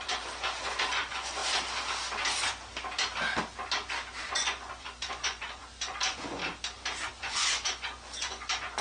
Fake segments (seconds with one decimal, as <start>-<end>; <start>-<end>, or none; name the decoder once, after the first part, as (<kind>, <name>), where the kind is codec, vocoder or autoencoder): 0.0-1.4 (vocoder, Vocos); 4.2-6.4; 7.1-8.8